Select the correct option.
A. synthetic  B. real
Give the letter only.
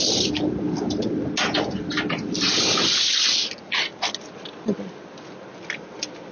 B